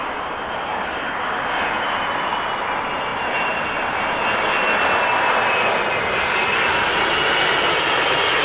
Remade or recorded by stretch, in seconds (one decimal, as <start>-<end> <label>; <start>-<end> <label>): 0.0-8.4 recorded

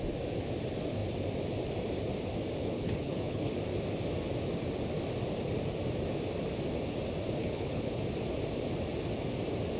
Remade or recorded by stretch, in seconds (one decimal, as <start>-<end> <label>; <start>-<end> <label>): 0.0-2.6 recorded; 2.6-3.6 remade; 3.6-7.4 recorded; 7.4-8.0 remade; 8.0-9.8 recorded

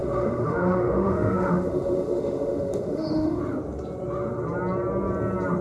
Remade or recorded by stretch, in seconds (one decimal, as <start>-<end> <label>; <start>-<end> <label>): 0.0-3.4 remade; 3.4-5.6 recorded

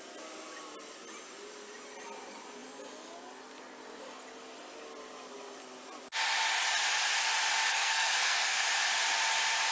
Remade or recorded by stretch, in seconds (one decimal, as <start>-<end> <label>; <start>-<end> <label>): 0.0-7.7 recorded; 7.7-8.7 remade; 8.7-9.7 recorded

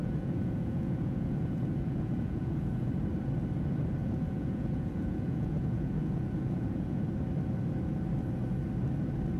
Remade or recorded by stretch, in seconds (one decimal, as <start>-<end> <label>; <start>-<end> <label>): 0.0-2.9 remade; 2.9-4.0 recorded; 4.0-7.0 remade; 7.0-9.4 recorded